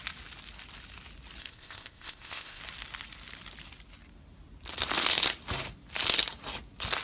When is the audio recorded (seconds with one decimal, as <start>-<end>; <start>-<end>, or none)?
0.0-1.4; 2.6-7.0